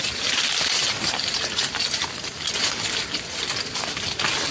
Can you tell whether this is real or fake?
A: real